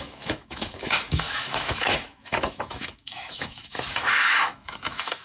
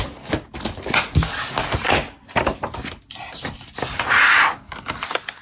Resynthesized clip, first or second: first